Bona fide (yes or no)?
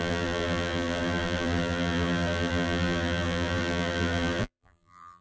no